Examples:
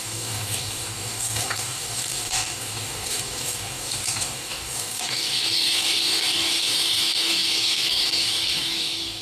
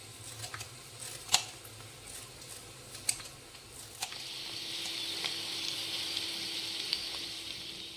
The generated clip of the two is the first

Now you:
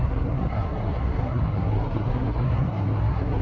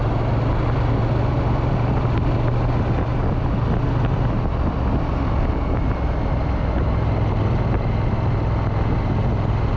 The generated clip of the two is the first